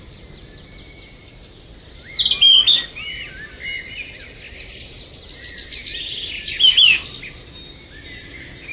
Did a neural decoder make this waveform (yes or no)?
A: no